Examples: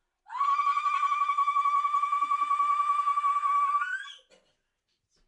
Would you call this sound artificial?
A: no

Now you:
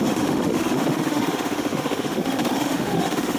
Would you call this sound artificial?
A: yes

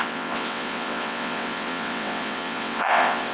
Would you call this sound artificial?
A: yes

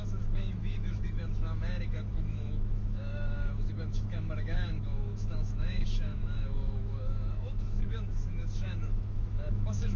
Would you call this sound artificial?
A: yes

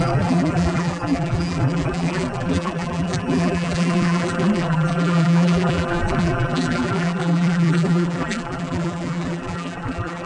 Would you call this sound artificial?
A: yes